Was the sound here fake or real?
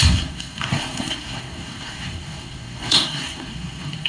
fake